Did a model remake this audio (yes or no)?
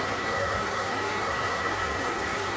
yes